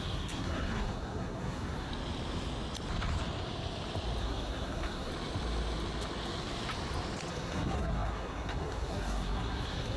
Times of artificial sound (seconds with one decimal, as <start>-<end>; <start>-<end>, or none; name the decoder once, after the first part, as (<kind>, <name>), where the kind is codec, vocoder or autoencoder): 0.0-1.9 (codec, SNAC); 4.2-5.1; 7.3-10.0